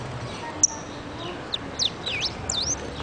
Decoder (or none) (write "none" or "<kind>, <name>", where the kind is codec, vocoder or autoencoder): none